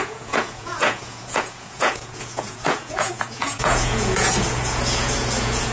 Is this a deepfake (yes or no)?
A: yes